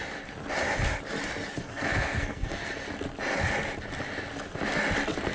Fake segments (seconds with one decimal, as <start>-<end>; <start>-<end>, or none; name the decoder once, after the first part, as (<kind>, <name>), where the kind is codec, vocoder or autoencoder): 1.6-2.7 (codec, SNAC)